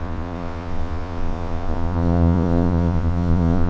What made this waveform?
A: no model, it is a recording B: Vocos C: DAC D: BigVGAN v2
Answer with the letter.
B